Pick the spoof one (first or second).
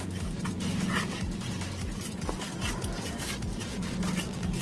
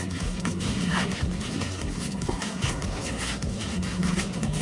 second